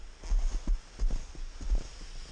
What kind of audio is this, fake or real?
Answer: real